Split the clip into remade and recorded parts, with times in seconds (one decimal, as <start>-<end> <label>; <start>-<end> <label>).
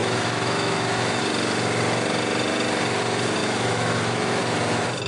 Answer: 0.0-1.2 remade; 1.2-3.4 recorded; 3.4-4.4 remade; 4.4-5.1 recorded